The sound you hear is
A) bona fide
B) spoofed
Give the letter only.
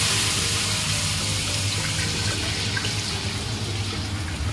A